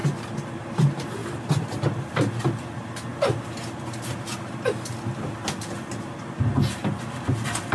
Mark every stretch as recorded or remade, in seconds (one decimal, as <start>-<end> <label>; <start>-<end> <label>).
0.0-1.2 recorded; 1.2-2.0 remade; 2.0-7.7 recorded